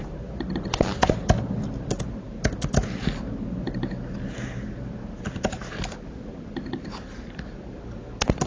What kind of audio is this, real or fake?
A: real